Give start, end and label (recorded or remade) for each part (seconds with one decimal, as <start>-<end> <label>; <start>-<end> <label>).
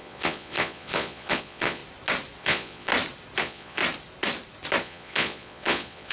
0.0-1.8 remade; 1.8-2.4 recorded; 2.4-2.9 remade; 2.9-3.4 recorded; 3.4-3.8 remade; 3.8-4.8 recorded; 4.8-6.1 remade